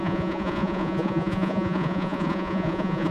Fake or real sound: fake